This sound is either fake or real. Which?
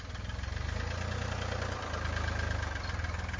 real